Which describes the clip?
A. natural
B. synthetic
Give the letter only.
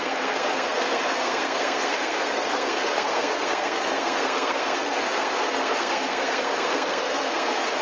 B